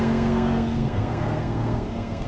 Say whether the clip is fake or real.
fake